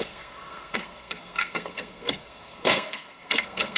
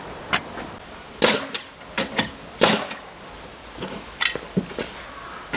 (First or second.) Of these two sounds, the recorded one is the second